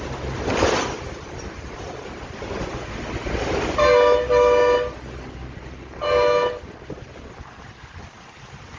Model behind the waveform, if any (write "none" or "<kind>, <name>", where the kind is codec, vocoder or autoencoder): none